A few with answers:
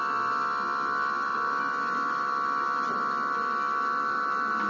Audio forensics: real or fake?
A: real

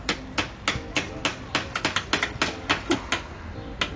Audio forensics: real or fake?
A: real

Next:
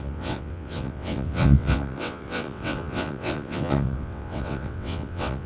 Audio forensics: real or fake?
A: fake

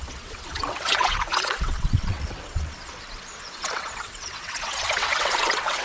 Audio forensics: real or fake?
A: fake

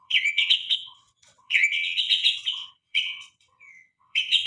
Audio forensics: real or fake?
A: fake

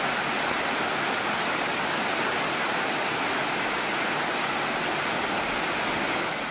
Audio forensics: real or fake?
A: real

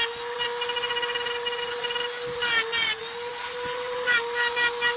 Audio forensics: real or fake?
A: real